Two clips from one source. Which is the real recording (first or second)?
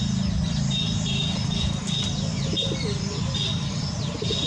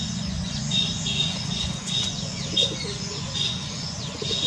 first